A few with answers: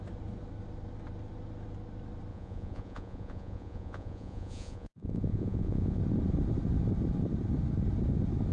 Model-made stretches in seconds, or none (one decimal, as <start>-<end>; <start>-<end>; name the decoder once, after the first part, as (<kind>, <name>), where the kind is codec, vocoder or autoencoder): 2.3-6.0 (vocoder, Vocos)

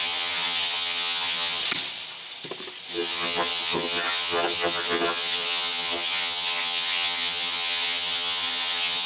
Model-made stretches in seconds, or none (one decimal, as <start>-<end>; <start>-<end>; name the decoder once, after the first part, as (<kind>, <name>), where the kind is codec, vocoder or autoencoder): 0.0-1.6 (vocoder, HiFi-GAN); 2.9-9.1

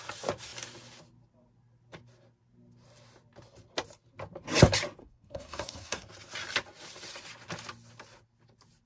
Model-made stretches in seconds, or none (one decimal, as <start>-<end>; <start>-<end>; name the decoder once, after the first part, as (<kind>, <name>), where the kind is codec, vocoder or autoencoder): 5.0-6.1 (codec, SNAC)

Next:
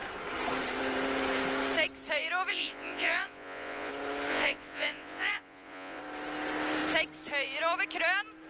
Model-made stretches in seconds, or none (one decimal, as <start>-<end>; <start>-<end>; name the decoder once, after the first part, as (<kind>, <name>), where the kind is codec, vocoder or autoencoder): 2.5-3.9 (vocoder, Vocos); 4.3-6.0